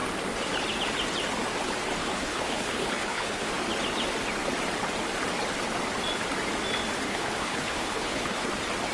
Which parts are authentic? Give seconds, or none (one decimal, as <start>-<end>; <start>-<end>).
0.0-2.0; 3.5-7.1; 8.5-8.9